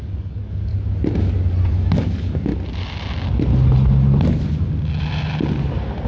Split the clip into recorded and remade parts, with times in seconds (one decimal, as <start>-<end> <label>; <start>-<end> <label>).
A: 0.0-0.7 remade; 0.7-1.7 recorded; 1.7-2.5 remade; 2.5-6.1 recorded

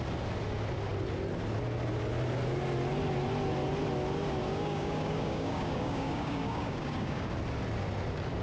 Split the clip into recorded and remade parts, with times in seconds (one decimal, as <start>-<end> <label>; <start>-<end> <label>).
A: 0.0-4.4 recorded; 4.4-7.3 remade; 7.3-8.4 recorded

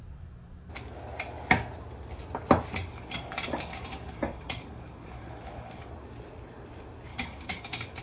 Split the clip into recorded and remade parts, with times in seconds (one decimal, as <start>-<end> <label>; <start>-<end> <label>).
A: 0.0-2.9 recorded; 2.9-5.9 remade; 5.9-7.1 recorded; 7.1-8.0 remade

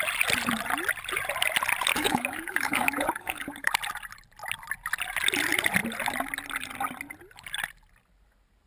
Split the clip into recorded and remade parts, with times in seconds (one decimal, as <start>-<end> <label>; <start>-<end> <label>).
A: 0.0-1.9 recorded; 1.9-3.7 remade; 3.7-8.7 recorded

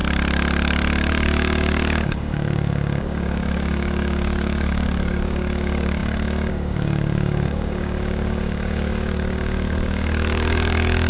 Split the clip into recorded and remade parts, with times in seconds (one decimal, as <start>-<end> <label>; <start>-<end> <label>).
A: 0.0-1.1 recorded; 1.1-11.1 remade

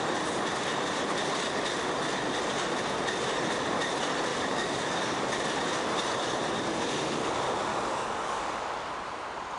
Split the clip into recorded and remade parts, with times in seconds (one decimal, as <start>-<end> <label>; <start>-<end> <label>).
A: 0.0-4.3 recorded; 4.3-5.4 remade; 5.4-7.7 recorded; 7.7-8.9 remade; 8.9-9.6 recorded

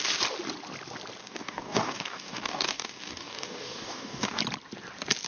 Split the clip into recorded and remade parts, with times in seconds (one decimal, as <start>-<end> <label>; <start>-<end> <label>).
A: 0.0-1.2 recorded; 1.2-4.4 remade; 4.4-5.3 recorded